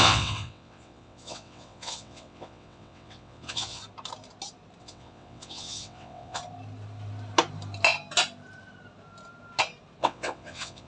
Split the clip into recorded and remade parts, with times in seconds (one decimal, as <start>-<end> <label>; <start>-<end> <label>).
0.0-3.8 remade; 3.8-4.8 recorded; 4.8-6.4 remade; 6.4-10.0 recorded; 10.0-10.9 remade